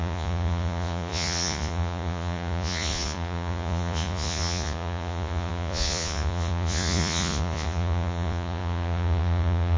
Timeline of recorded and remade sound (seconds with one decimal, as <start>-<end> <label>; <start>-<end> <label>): 0.0-9.8 remade